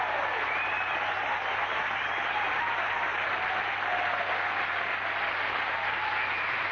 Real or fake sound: real